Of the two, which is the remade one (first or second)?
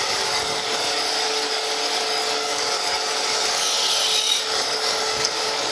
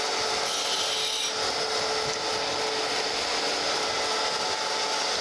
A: first